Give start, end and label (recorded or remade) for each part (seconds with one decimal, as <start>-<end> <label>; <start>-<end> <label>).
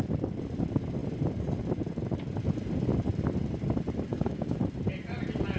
0.0-4.1 recorded; 4.1-4.6 remade; 4.6-5.6 recorded